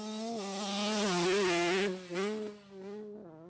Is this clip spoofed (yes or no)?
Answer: no